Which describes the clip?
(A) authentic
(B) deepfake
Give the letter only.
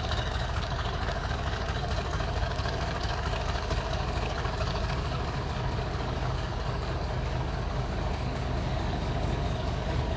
B